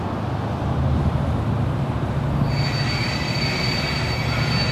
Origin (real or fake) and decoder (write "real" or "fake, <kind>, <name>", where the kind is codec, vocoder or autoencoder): real